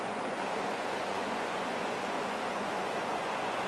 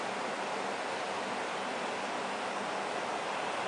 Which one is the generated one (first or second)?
first